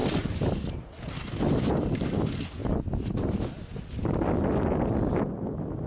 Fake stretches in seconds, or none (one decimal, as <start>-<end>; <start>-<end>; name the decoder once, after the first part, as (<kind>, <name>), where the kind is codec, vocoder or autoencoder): 0.0-2.2 (vocoder, BigVGAN v2); 2.6-3.5

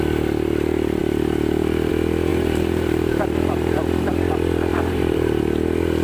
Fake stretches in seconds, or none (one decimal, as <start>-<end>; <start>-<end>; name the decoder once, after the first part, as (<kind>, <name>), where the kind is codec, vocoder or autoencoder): 2.3-4.1 (vocoder, BigVGAN v2); 4.7-5.4

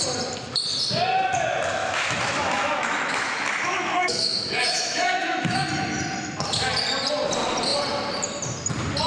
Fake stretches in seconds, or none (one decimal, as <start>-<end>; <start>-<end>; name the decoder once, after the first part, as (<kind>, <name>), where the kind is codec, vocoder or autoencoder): 1.8-5.7 (autoencoder, DAC-VAE)

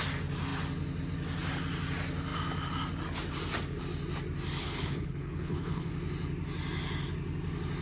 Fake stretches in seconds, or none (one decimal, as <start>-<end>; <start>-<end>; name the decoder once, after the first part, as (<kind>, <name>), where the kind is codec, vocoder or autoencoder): 4.6-5.9 (codec, HILCodec)

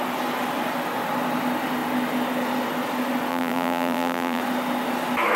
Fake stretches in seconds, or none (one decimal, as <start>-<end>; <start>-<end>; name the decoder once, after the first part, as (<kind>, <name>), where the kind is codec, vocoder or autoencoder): 3.3-4.4 (vocoder, BigVGAN v2)

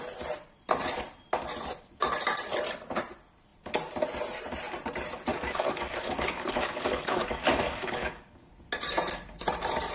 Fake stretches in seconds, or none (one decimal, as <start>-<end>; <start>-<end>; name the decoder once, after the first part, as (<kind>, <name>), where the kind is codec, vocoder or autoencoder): 5.3-8.5 (codec, DAC)

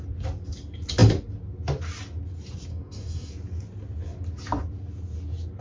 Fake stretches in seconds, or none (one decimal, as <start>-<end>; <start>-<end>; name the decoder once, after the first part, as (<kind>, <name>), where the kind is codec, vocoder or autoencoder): 2.7-3.3 (codec, DAC)